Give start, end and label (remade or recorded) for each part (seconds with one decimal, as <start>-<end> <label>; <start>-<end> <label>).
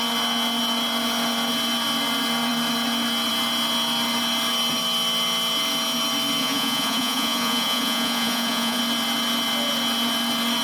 0.0-6.4 recorded; 6.4-8.8 remade; 8.8-10.6 recorded